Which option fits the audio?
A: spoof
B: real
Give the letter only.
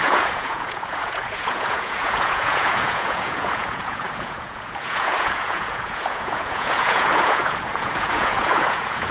A